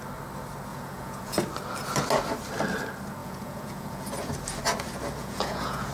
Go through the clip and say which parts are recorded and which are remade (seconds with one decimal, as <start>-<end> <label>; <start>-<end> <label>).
0.0-0.7 recorded; 0.7-1.4 remade; 1.4-3.2 recorded; 3.2-4.3 remade; 4.3-5.2 recorded; 5.2-5.9 remade